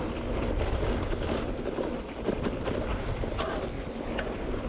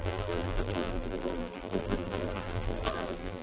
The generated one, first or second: second